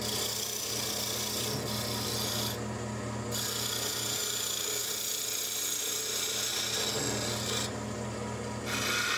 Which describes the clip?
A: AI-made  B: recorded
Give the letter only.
B